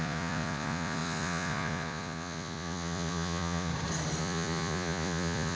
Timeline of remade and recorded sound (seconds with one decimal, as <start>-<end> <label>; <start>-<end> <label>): 0.0-3.7 remade; 3.7-4.2 recorded; 4.2-5.5 remade